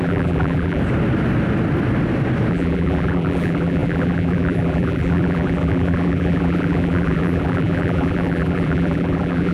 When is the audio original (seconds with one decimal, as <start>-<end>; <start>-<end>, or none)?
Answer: 0.8-2.5